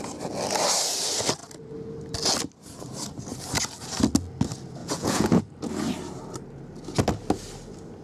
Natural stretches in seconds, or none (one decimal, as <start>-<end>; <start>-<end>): 0.0-4.8; 5.4-8.0